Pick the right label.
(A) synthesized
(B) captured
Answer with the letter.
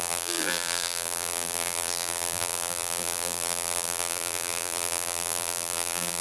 A